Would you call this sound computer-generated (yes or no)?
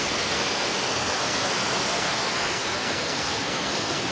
yes